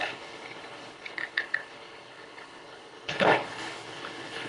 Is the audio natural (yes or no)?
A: no